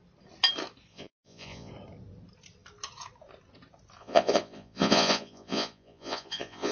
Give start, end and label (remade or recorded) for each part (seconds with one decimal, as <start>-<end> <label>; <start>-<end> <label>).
0.0-0.9 recorded; 0.9-1.7 remade; 1.7-4.0 recorded; 4.0-6.7 remade